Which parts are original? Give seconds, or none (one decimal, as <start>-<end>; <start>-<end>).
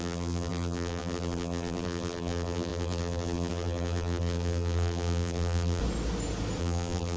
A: 5.8-6.6